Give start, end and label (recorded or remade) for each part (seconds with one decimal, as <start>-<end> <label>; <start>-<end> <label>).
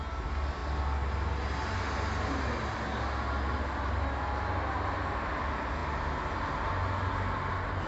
0.0-7.9 recorded